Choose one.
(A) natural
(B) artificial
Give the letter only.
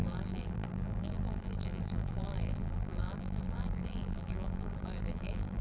B